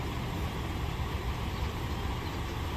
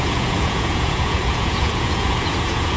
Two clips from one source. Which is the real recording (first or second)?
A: first